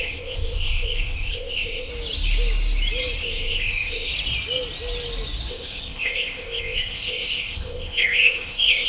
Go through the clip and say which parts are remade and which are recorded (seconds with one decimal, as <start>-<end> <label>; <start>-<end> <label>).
0.0-1.9 remade; 1.9-3.2 recorded; 3.2-4.1 remade; 4.1-5.5 recorded; 5.5-8.9 remade